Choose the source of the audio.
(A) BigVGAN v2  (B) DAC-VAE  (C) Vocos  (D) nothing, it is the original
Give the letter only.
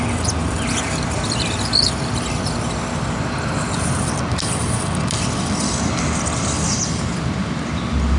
D